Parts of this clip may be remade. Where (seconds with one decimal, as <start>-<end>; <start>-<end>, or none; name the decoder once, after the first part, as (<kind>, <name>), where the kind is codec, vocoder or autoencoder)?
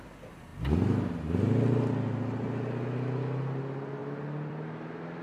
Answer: none